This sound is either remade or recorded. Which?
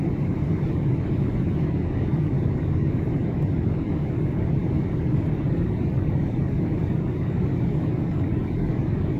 remade